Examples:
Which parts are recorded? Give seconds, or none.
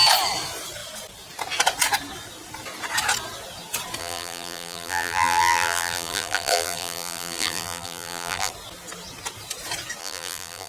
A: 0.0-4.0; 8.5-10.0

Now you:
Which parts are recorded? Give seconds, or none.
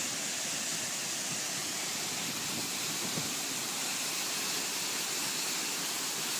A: 0.0-6.4